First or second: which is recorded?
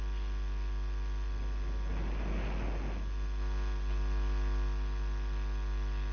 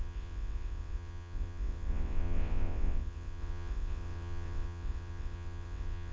first